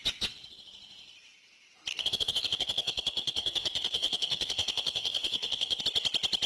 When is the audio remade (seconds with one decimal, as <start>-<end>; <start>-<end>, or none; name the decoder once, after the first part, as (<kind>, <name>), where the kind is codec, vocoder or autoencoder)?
1.9-5.8 (codec, SNAC)